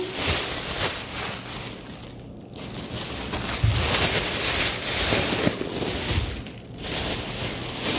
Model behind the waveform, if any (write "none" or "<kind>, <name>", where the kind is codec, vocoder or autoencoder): none